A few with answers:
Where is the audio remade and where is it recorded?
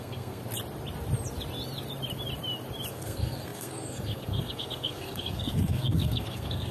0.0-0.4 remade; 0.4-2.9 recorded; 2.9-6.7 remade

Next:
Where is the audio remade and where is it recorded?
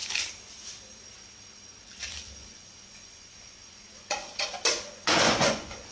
0.0-2.4 recorded; 2.4-5.9 remade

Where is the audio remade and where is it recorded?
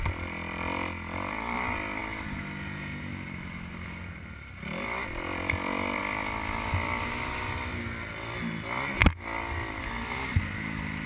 0.0-11.1 recorded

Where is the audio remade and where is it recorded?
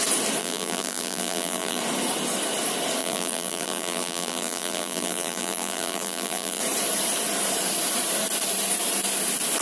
0.0-0.4 recorded; 0.4-1.8 remade; 1.8-3.0 recorded; 3.0-6.6 remade; 6.6-9.6 recorded